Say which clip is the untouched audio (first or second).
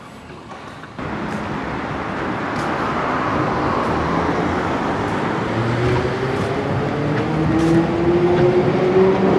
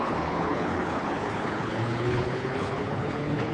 first